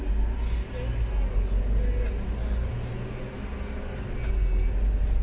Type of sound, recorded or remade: recorded